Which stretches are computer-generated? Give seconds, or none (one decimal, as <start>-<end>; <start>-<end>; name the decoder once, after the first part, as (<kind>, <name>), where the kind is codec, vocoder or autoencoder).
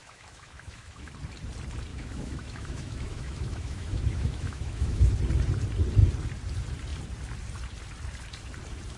0.0-1.1 (autoencoder, DAC-VAE); 1.9-5.1